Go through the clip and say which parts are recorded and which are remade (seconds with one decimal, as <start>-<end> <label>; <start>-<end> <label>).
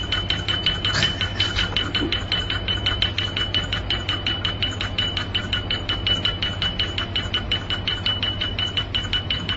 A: 0.0-9.6 remade